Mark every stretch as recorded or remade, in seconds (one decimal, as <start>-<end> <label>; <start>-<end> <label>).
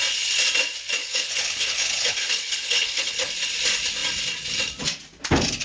0.0-1.0 recorded; 1.0-3.3 remade; 3.3-5.6 recorded